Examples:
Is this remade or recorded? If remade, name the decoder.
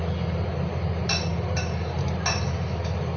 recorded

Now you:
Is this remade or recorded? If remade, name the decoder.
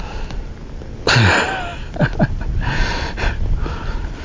recorded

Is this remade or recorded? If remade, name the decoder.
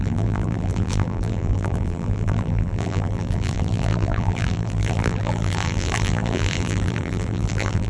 remade, vocoder, BigVGAN v2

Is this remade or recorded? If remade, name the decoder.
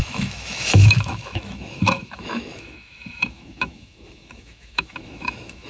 remade, autoencoder, DAC-VAE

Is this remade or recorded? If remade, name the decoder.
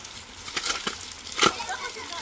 recorded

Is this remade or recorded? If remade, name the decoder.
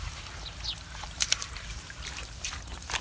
remade, vocoder, BigVGAN v2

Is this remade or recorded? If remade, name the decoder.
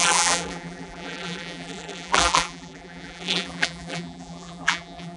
remade, vocoder, BigVGAN v2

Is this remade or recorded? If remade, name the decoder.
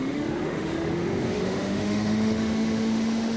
remade, autoencoder, DAC-VAE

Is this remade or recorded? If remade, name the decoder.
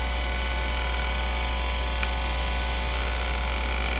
recorded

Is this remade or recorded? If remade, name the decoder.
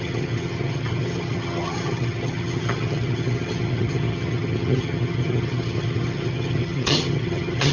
remade, vocoder, HiFi-GAN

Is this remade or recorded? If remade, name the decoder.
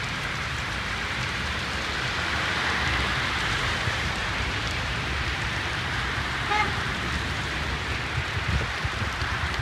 remade, vocoder, BigVGAN v2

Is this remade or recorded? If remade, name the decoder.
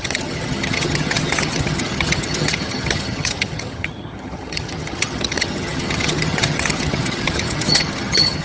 remade, vocoder, HiFi-GAN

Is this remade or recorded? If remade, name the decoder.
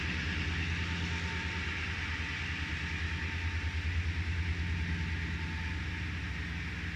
recorded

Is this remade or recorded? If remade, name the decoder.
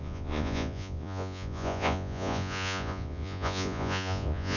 remade, vocoder, Vocos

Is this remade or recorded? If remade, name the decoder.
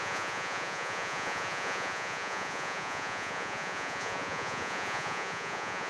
remade, vocoder, Vocos